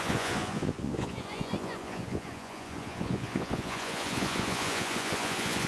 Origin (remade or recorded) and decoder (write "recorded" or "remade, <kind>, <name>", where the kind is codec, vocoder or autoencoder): remade, vocoder, Vocos